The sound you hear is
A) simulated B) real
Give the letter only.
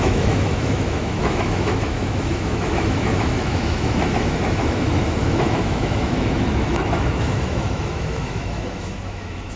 A